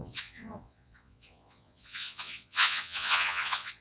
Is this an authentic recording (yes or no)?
no